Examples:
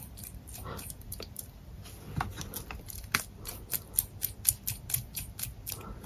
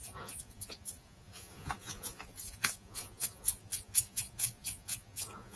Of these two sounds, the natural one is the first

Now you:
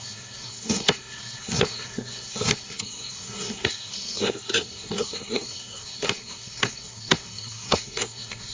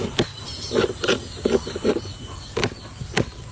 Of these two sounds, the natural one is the second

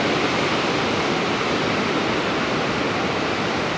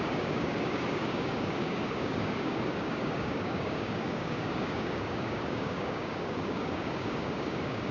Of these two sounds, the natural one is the first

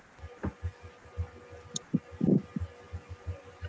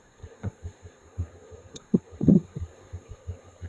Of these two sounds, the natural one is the first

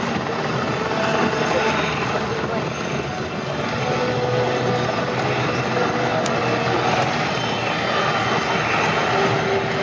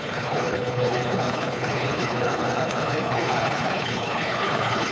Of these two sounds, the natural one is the first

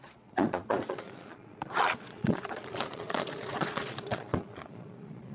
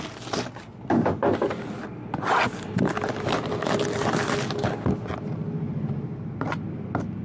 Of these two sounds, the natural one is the second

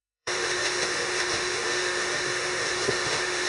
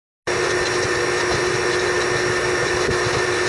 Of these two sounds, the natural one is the second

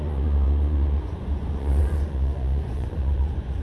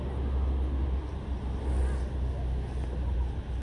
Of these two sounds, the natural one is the second